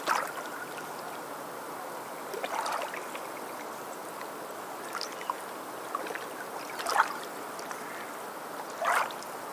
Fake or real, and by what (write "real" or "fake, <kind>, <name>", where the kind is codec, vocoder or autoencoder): real